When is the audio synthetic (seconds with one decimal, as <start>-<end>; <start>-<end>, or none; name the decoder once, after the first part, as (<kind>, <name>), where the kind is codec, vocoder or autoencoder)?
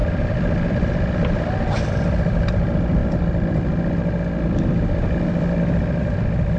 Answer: 0.7-3.0 (vocoder, BigVGAN v2); 6.0-6.6